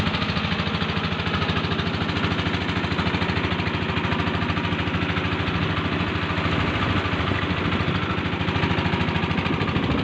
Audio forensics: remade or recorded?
recorded